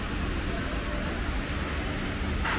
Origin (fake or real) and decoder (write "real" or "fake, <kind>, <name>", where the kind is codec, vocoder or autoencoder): real